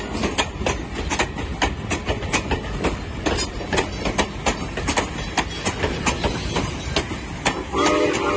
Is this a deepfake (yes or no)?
no